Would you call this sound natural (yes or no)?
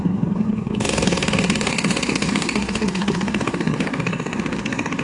no